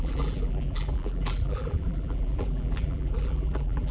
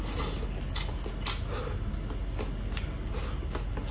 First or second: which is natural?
second